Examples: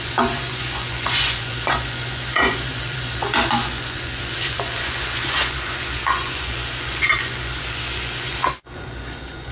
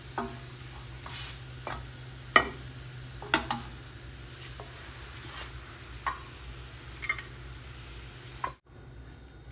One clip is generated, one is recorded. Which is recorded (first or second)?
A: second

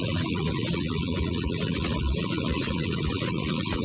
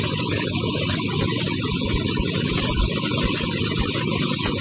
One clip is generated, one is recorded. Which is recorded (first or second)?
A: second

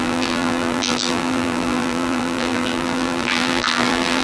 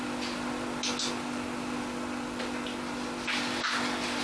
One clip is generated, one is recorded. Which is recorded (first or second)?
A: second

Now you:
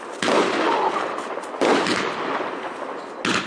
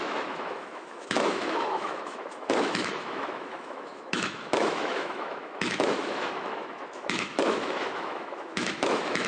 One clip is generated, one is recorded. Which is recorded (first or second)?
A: first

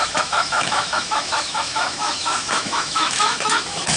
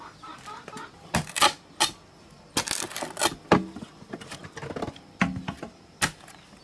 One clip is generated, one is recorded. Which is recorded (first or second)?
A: second